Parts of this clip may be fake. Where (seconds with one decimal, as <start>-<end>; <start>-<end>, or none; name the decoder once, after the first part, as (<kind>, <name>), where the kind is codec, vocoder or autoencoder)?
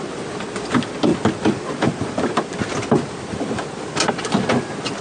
none